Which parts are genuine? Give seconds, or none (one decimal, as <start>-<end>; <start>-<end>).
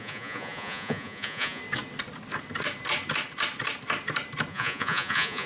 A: 1.6-4.5